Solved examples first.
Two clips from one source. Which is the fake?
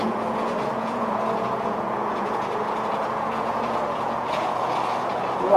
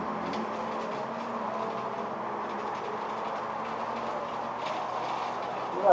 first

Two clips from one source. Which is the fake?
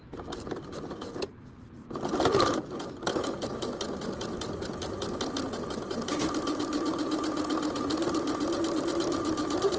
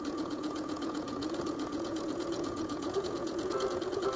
second